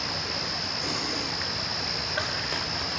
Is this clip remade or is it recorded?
recorded